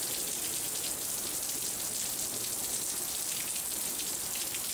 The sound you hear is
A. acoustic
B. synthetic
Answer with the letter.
A